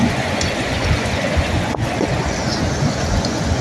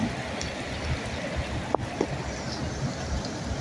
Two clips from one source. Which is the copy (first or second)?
first